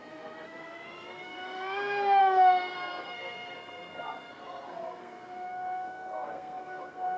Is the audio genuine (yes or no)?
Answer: no